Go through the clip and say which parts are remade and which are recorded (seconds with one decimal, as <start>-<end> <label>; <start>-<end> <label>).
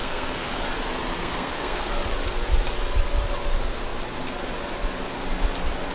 0.0-0.6 remade; 0.6-1.2 recorded; 1.2-1.9 remade; 1.9-5.9 recorded